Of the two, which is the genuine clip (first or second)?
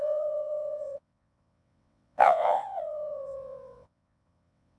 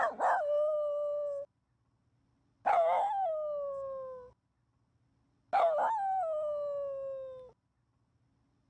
second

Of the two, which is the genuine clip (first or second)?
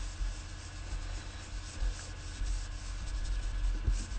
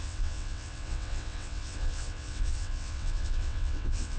first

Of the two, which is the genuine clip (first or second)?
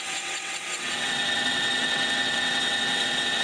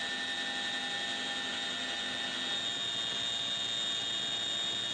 second